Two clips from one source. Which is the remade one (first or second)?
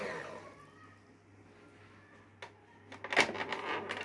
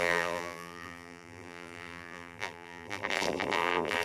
second